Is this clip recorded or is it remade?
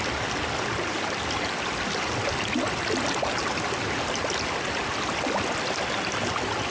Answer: recorded